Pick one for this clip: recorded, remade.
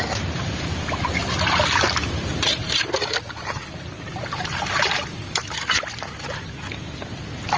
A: recorded